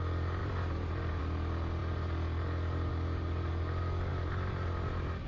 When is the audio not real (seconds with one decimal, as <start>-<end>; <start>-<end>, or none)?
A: 0.4-1.2